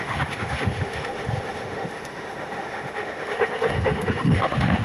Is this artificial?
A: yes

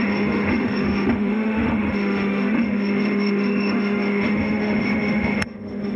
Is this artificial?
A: yes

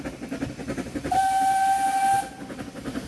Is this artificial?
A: no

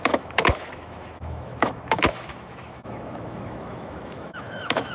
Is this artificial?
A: yes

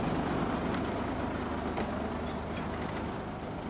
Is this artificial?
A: no